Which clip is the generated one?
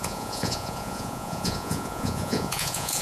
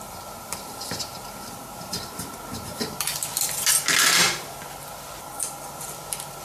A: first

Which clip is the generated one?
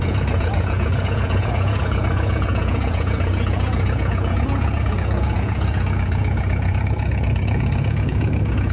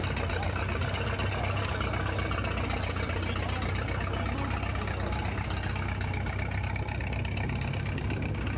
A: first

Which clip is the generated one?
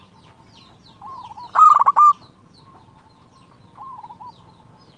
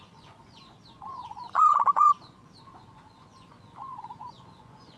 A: second